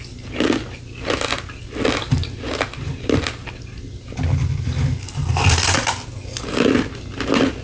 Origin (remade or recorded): recorded